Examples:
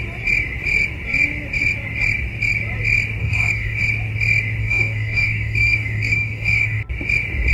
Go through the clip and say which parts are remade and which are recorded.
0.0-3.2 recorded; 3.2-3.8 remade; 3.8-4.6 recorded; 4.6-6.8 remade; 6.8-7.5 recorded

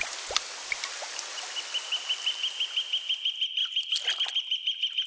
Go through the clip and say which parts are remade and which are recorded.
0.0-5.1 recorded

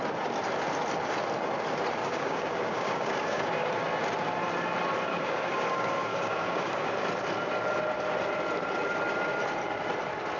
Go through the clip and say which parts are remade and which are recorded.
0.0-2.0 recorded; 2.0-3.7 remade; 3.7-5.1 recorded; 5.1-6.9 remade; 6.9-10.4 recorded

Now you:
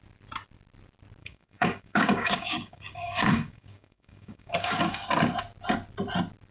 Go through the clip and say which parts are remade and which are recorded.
0.0-1.2 recorded; 1.2-5.1 remade; 5.1-6.5 recorded

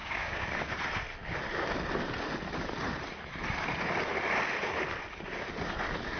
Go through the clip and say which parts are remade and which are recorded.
0.0-0.7 remade; 0.7-6.2 recorded

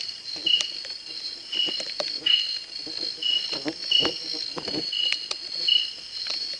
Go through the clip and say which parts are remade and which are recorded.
0.0-6.6 recorded